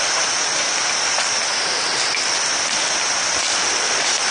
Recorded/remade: recorded